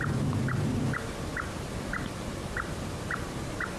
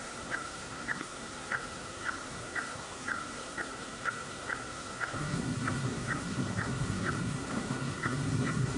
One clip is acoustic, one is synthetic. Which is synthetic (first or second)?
second